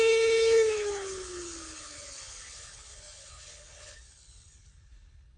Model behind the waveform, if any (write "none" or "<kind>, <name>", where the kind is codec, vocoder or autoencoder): codec, HILCodec